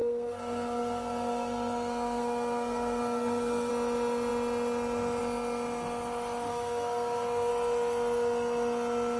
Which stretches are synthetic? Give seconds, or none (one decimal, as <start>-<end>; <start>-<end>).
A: 0.0-3.7; 6.5-7.5